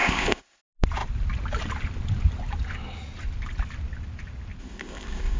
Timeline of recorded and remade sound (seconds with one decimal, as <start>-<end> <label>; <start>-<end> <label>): 0.0-0.6 remade; 0.6-4.6 recorded; 4.6-5.4 remade